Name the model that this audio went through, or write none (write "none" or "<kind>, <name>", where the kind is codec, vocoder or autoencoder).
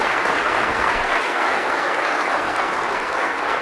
codec, SNAC